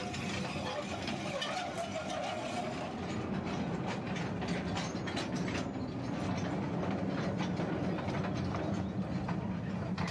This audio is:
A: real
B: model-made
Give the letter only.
A